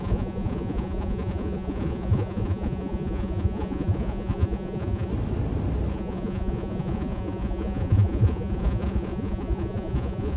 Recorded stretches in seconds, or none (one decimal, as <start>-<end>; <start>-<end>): 5.1-5.9